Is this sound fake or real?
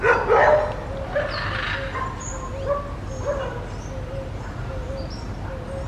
real